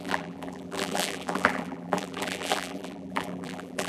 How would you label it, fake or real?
fake